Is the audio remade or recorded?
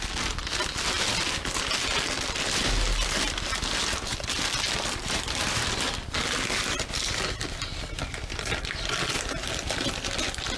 recorded